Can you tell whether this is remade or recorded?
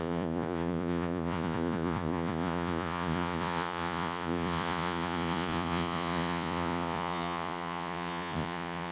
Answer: remade